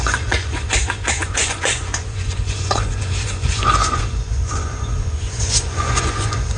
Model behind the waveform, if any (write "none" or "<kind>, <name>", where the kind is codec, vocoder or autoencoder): vocoder, Vocos